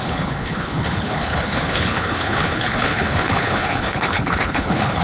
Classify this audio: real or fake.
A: fake